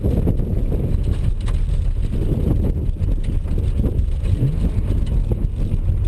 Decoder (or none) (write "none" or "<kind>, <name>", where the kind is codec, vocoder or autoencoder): none